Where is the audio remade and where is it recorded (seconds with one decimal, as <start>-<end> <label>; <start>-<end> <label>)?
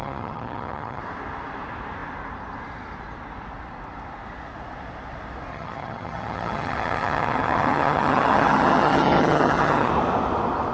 0.0-1.0 remade; 1.0-5.5 recorded; 5.5-9.9 remade; 9.9-10.7 recorded